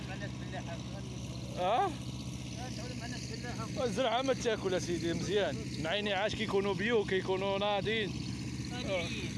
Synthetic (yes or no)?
no